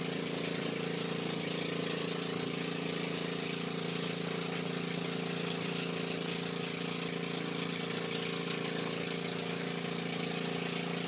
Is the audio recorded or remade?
recorded